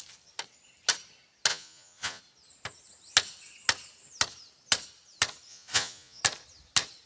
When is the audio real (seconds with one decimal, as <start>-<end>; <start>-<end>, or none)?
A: 0.0-1.5; 2.2-5.5; 6.2-7.1

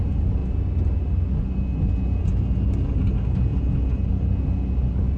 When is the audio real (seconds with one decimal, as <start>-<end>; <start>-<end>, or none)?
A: 0.0-5.2

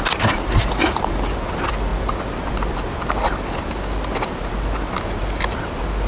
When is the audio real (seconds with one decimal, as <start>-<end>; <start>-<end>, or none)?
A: 0.0-6.1

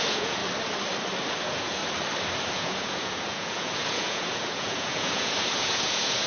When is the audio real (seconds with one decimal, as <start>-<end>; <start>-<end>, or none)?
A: 0.4-1.4; 1.8-2.5

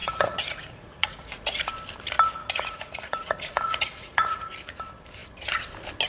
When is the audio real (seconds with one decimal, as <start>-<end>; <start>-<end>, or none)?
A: 1.6-2.4; 4.5-6.1

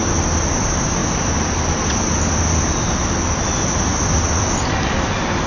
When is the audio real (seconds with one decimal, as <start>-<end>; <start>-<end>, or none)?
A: 0.0-5.5

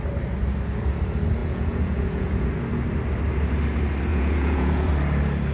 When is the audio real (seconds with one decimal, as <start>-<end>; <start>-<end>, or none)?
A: 0.0-1.4; 2.5-4.1; 4.9-5.5